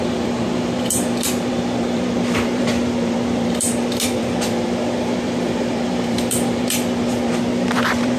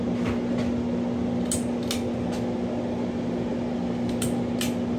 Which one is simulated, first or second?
first